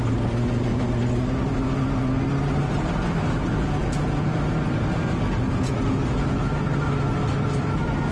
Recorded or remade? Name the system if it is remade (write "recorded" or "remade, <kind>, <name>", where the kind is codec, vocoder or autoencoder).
recorded